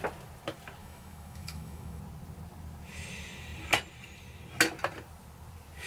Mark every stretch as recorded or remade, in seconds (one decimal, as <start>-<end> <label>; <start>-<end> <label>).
0.0-0.8 recorded; 0.8-2.0 remade; 2.0-5.9 recorded